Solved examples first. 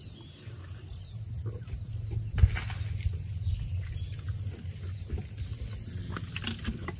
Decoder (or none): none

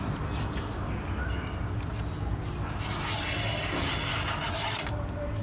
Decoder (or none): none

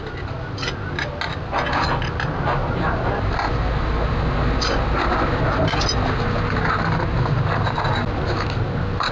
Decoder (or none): none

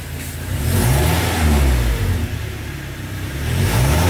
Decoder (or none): none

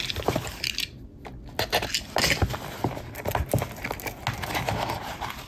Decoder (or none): none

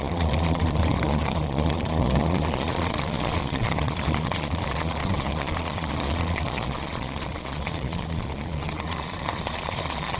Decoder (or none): vocoder, Vocos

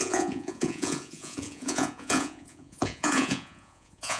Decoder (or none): vocoder, Vocos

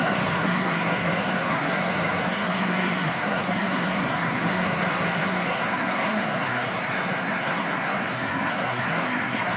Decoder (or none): codec, SNAC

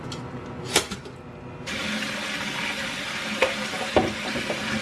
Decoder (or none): none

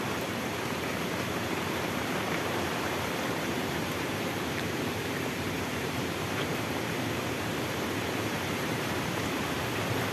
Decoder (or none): vocoder, BigVGAN v2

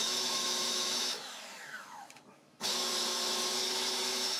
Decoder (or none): autoencoder, DAC-VAE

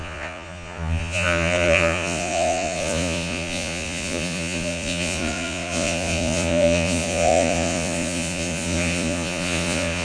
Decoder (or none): vocoder, Vocos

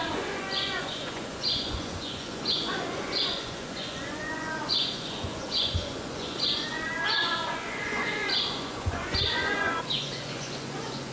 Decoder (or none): vocoder, Vocos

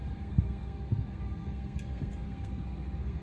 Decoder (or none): codec, SNAC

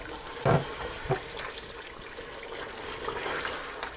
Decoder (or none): none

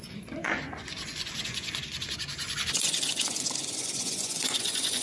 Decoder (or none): vocoder, Vocos